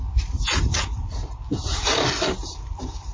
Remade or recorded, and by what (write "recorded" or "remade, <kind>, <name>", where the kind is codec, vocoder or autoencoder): remade, vocoder, BigVGAN v2